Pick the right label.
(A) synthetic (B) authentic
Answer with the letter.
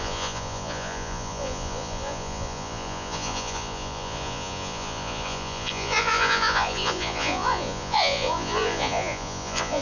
A